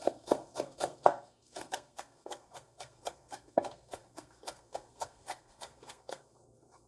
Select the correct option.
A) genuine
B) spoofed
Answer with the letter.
B